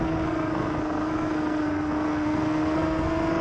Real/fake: fake